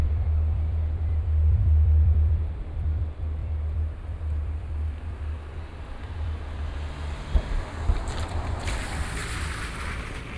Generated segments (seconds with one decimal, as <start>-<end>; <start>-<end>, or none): 0.0-9.2